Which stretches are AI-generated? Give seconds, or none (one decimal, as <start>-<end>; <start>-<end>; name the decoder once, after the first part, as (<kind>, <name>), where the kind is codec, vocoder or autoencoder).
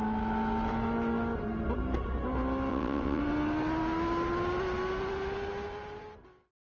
2.7-3.2 (vocoder, WaveNeXt)